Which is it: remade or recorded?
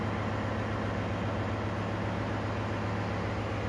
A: recorded